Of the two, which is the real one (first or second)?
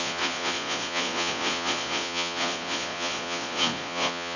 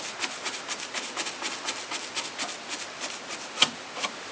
second